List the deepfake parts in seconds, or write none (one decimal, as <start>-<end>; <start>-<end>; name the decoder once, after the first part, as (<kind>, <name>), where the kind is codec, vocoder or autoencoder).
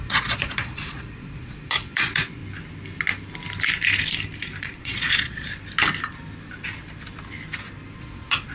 0.0-2.4 (vocoder, Vocos); 4.6-5.5; 8.0-8.5